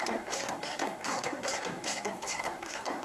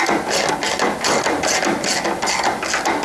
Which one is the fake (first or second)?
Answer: first